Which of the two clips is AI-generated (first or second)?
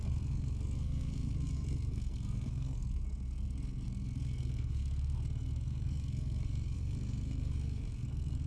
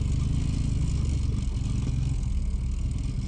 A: first